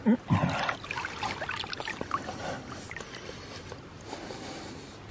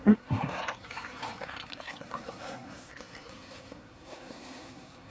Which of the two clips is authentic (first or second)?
first